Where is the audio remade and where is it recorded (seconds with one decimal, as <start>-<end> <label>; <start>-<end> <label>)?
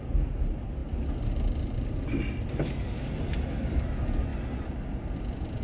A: 0.0-5.6 recorded